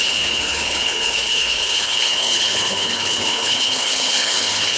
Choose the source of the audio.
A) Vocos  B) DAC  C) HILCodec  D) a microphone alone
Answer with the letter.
C